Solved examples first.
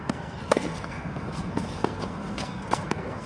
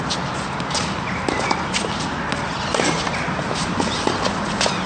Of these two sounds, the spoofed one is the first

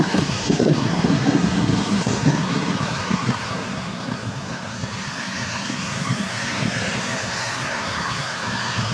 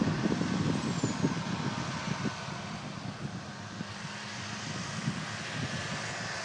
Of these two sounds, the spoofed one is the first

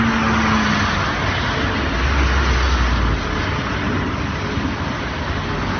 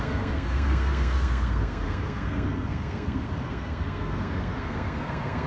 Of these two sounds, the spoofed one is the second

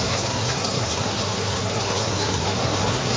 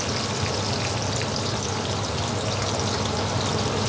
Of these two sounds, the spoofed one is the first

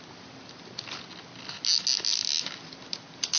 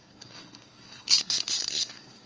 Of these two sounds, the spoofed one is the second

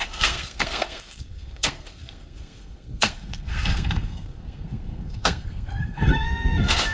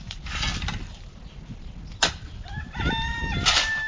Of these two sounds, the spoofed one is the first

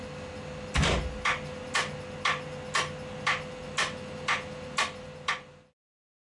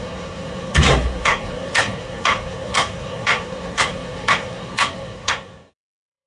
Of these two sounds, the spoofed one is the second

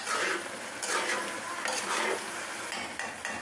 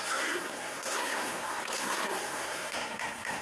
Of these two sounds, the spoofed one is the second